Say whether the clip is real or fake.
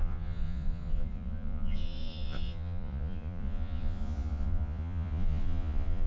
fake